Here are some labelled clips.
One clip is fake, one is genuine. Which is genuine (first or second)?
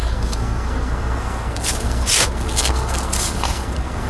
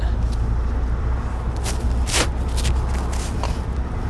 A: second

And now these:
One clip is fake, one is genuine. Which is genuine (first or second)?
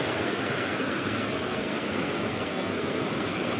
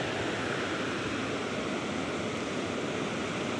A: second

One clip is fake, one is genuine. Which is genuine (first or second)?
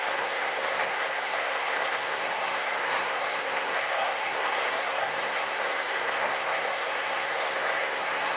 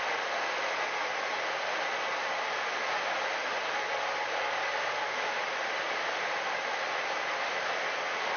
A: second